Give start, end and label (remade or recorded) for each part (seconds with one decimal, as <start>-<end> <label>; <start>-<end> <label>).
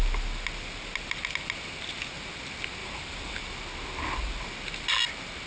0.0-2.8 recorded; 2.8-3.4 remade; 3.4-5.5 recorded